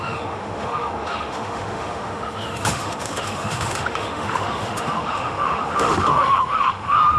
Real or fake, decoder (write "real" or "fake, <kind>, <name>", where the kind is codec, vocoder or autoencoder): fake, autoencoder, DAC-VAE